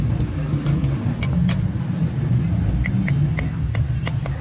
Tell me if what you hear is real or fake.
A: real